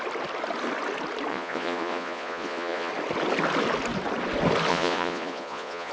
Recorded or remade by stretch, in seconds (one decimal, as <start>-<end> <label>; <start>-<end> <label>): 0.0-1.3 recorded; 1.3-2.9 remade; 2.9-4.7 recorded; 4.7-5.9 remade